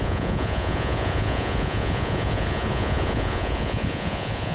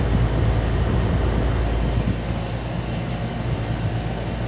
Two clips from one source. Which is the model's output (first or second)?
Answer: first